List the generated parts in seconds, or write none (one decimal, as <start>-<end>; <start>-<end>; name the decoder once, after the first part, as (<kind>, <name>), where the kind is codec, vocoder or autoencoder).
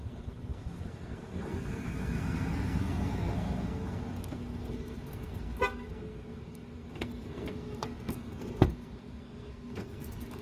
0.0-10.4 (codec, SNAC)